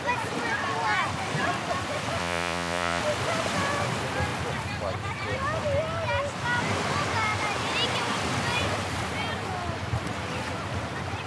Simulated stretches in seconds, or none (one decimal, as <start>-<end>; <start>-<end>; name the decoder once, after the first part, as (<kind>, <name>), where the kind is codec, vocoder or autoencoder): 2.2-3.0 (vocoder, Vocos)